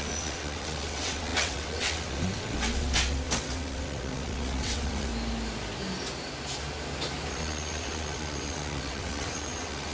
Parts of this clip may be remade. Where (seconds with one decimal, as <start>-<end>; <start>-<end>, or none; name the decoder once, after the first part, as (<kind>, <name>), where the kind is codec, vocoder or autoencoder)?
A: 0.0-5.1 (vocoder, WaveNeXt); 7.3-9.9